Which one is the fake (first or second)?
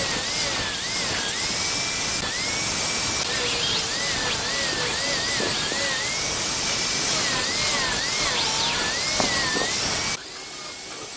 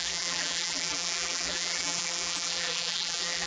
second